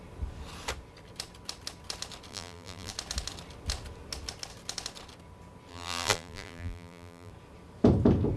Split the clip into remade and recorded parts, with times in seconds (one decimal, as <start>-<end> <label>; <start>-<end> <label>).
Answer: 0.0-2.3 recorded; 2.3-2.9 remade; 2.9-5.7 recorded; 5.7-7.3 remade; 7.3-8.4 recorded